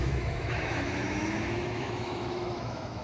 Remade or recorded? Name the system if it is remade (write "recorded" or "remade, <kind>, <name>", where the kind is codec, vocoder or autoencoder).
remade, autoencoder, DAC-VAE